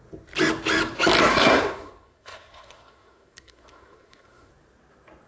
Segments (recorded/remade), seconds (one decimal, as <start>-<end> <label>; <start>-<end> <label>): 0.0-1.3 recorded; 1.3-4.5 remade; 4.5-5.3 recorded